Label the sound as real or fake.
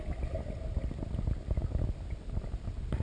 real